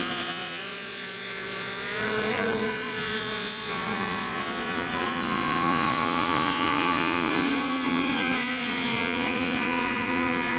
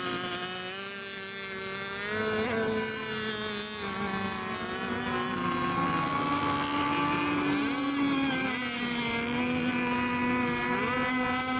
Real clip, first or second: second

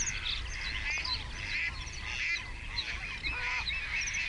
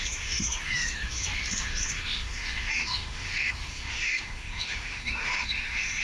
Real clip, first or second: first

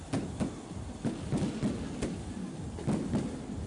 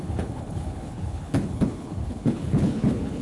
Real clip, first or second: first